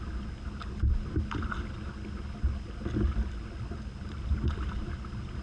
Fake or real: real